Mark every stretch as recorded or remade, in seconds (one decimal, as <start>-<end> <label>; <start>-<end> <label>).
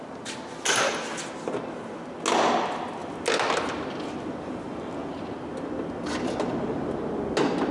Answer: 0.0-7.7 recorded